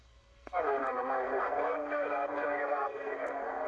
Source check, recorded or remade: remade